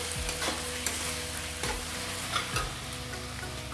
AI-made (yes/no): no